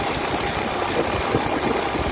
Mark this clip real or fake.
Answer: real